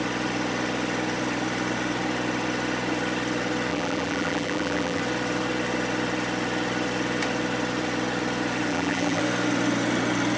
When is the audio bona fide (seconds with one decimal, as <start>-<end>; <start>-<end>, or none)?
0.0-3.7; 5.0-8.7; 9.2-10.4